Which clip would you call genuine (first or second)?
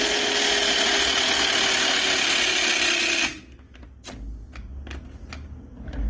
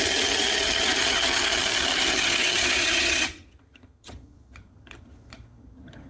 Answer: first